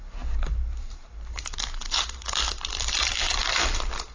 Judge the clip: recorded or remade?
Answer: remade